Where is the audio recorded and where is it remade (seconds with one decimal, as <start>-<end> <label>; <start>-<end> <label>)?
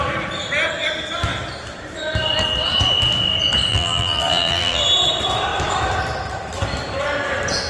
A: 0.0-3.7 recorded; 3.7-4.8 remade; 4.8-7.7 recorded